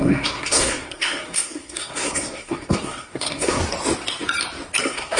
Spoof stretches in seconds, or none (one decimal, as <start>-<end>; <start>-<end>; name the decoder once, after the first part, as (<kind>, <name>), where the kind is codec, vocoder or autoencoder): 0.0-3.6 (codec, SNAC); 4.8-5.2

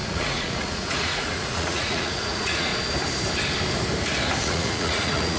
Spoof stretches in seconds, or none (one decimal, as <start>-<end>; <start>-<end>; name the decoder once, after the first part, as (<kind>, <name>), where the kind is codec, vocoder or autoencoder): 0.0-2.7 (vocoder, Vocos); 4.4-5.4